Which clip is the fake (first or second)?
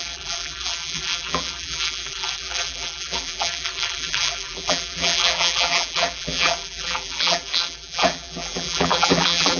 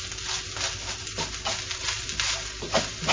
first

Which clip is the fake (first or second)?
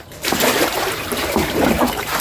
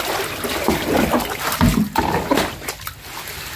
first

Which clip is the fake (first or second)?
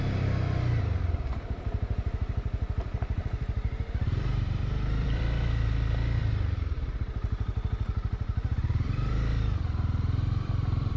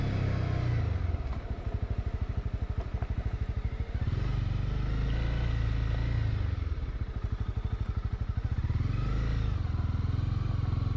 first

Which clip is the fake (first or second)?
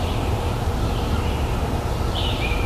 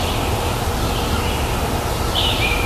first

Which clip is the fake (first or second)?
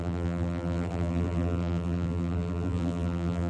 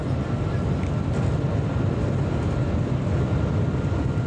first